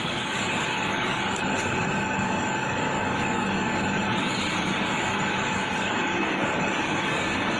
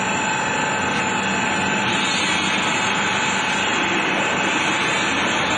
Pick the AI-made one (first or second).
first